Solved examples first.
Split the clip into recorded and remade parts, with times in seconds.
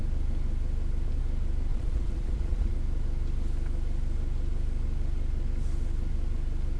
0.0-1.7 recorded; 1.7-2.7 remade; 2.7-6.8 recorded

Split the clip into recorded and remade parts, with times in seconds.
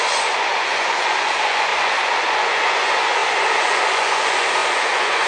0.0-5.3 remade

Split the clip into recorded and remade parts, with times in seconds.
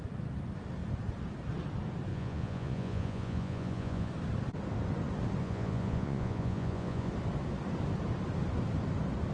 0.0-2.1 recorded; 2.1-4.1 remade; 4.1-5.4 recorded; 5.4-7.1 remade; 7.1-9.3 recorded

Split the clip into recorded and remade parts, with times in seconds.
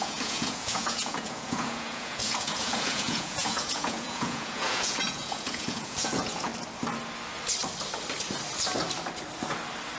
0.0-6.5 remade; 6.5-10.0 recorded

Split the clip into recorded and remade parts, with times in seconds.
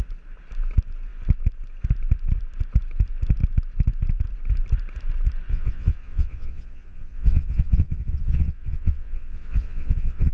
0.0-5.5 recorded; 5.5-10.3 remade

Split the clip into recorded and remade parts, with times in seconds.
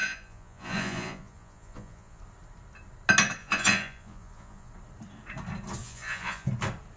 0.0-2.2 remade; 2.2-3.4 recorded; 3.4-4.7 remade; 4.7-5.8 recorded; 5.8-6.5 remade; 6.5-7.0 recorded